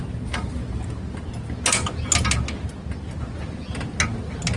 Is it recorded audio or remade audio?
recorded